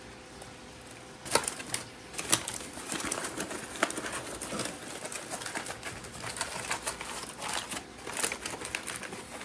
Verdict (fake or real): real